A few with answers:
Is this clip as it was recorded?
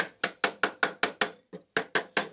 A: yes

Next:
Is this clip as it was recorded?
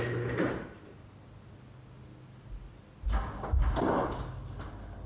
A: yes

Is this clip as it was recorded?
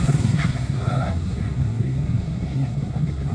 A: no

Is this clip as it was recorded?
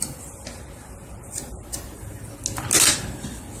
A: yes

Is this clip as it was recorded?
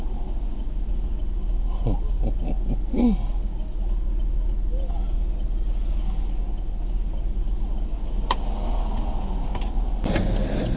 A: yes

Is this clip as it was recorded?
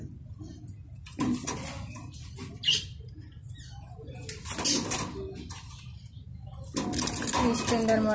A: yes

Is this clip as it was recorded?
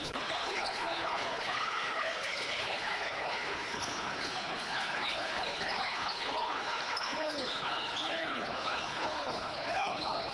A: no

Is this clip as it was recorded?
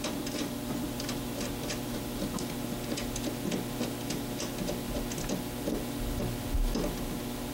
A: yes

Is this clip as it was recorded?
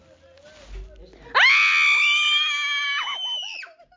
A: yes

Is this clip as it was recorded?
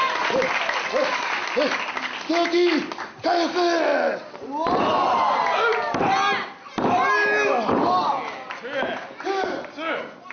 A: yes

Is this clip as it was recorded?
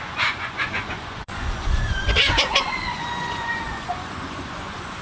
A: no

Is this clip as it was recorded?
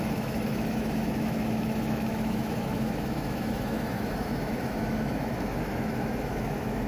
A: no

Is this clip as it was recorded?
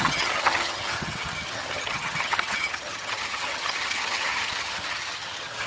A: no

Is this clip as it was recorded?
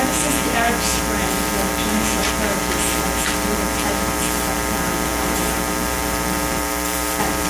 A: no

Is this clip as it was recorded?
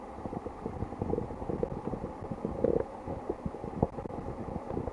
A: yes